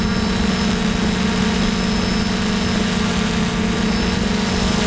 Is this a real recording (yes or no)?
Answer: yes